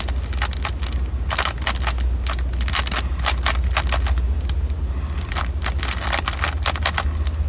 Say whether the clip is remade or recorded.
recorded